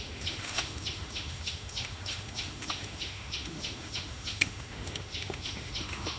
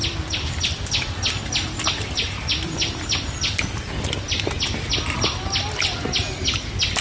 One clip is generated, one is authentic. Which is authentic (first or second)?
second